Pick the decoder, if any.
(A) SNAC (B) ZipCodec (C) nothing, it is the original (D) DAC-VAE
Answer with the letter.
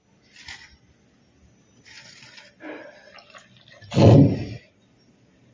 C